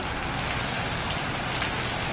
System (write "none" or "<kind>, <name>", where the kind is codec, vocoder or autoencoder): none